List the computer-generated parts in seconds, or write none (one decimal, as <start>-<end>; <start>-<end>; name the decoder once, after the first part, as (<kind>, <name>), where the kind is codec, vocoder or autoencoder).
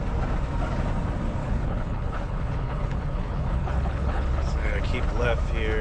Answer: 1.4-4.8 (codec, HILCodec)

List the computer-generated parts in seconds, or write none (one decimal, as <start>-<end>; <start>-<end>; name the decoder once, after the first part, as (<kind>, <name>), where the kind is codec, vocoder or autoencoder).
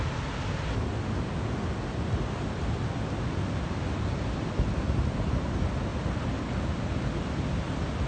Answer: none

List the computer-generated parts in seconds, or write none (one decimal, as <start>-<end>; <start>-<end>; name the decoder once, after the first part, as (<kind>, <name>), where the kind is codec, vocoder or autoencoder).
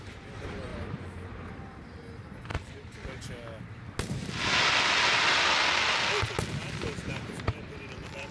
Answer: 0.0-2.5 (vocoder, BigVGAN v2); 7.1-8.3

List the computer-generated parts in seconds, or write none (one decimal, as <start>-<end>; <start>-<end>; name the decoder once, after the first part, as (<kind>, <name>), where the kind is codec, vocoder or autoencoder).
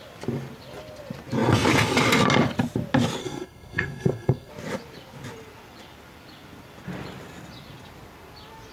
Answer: 3.2-4.5 (codec, SNAC)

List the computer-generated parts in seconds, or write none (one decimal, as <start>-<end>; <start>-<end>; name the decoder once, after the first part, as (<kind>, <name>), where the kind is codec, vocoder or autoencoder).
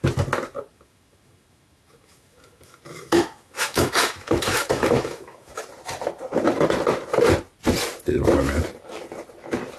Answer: 0.7-5.6 (autoencoder, DAC-VAE)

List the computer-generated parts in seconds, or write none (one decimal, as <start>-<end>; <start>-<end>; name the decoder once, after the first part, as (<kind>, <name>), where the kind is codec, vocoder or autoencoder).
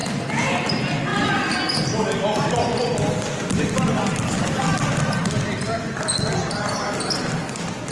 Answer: none